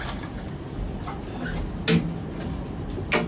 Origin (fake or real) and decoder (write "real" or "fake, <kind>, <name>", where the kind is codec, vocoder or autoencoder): real